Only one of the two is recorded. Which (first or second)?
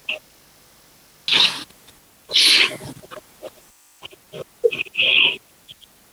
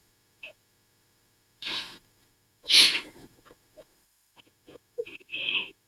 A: first